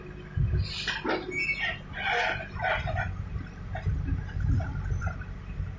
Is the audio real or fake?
real